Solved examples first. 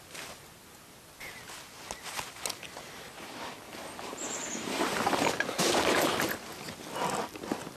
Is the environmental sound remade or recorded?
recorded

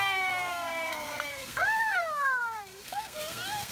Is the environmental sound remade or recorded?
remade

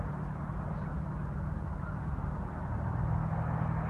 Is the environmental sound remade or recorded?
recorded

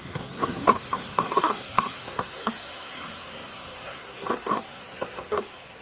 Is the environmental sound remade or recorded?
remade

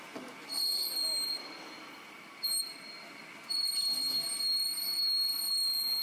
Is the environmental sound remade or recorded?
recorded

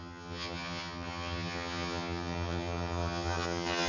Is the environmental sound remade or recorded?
remade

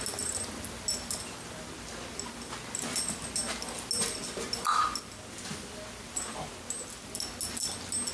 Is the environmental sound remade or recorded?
recorded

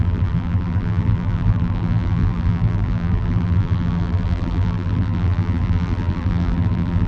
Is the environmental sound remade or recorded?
remade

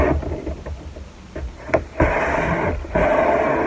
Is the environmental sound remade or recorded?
recorded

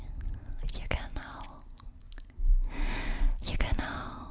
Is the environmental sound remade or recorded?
recorded